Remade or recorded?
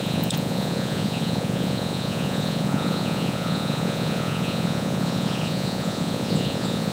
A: remade